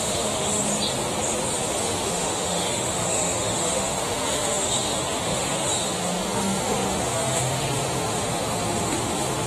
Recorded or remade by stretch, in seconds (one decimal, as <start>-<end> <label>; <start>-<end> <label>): 0.0-0.6 remade; 0.6-1.8 recorded; 1.8-9.5 remade